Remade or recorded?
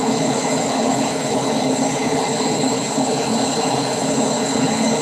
remade